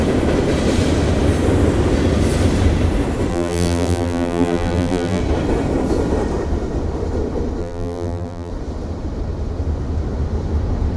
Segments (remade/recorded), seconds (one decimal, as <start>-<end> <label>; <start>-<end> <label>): 0.0-3.3 recorded; 3.3-5.2 remade; 5.2-7.6 recorded; 7.6-8.5 remade; 8.5-11.0 recorded